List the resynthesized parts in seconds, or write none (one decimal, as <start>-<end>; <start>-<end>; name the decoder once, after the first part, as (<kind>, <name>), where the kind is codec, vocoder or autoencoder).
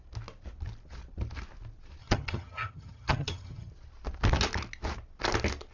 2.0-3.7 (vocoder, HiFi-GAN)